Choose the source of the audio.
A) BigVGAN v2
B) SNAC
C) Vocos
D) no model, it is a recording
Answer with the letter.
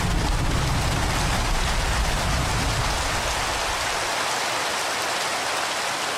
D